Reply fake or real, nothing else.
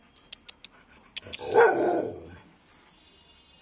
real